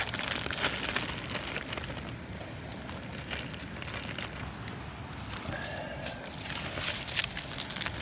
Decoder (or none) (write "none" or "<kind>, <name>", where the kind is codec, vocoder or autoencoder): none